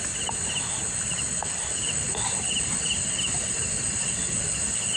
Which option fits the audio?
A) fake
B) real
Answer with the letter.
B